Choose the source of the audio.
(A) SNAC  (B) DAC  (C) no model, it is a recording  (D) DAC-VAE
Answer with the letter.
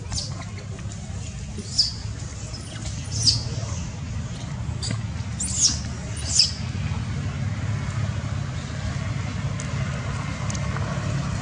C